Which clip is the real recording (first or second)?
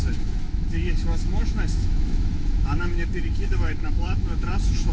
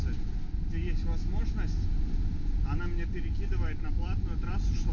second